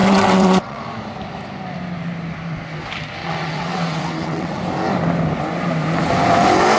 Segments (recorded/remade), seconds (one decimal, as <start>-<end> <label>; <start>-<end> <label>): 0.0-0.8 remade; 0.8-3.2 recorded; 3.2-4.6 remade; 4.6-6.8 recorded